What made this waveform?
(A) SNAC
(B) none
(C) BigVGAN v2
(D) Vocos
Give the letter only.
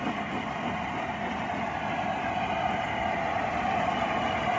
B